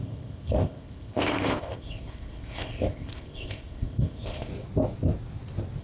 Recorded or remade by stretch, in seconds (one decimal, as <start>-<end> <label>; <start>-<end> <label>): 0.0-4.5 remade; 4.5-5.8 recorded